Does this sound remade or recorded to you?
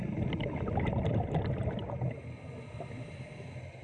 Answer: recorded